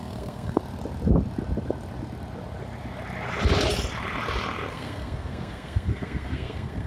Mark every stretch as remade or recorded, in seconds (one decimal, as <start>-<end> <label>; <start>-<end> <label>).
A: 0.0-0.6 remade; 0.6-4.7 recorded; 4.7-6.9 remade